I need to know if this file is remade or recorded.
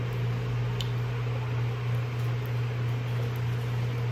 recorded